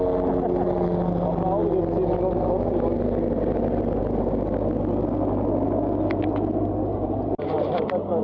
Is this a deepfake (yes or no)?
no